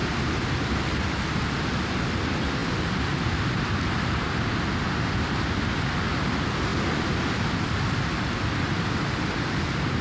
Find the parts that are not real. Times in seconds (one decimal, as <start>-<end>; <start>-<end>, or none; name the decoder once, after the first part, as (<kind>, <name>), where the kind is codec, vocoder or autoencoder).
0.0-0.8 (vocoder, BigVGAN v2); 6.7-7.3

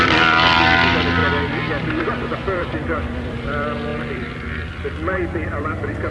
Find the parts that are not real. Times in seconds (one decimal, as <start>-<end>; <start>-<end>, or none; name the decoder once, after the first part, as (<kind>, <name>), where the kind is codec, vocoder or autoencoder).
0.0-1.2 (vocoder, BigVGAN v2); 1.7-6.1

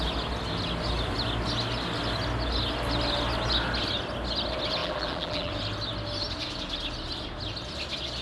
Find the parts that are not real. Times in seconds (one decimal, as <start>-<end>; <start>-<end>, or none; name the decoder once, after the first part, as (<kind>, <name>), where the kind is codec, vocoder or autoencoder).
4.8-5.5 (vocoder, BigVGAN v2)

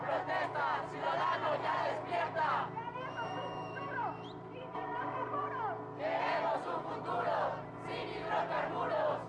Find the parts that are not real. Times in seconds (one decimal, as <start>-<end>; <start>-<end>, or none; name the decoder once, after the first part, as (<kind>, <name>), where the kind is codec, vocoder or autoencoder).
1.4-5.4 (vocoder, BigVGAN v2)

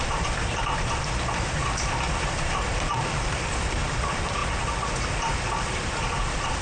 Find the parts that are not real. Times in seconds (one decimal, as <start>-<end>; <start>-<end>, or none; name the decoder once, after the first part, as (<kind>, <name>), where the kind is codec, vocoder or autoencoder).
0.0-4.4 (vocoder, BigVGAN v2); 5.2-6.6

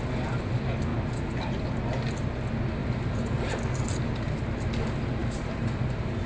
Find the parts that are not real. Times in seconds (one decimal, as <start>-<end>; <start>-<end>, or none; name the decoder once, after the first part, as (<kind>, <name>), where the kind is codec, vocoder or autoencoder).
0.9-1.6 (vocoder, BigVGAN v2); 2.8-3.4; 5.2-6.3